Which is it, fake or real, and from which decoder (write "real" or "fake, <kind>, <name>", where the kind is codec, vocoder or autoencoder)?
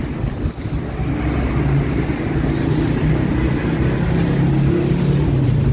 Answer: real